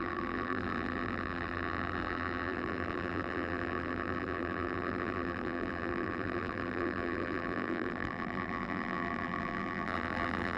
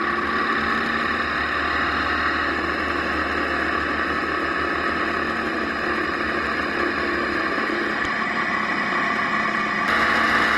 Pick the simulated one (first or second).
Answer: first